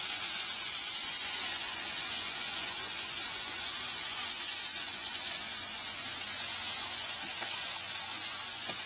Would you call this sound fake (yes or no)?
yes